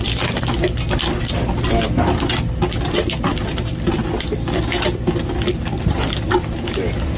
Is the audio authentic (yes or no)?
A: yes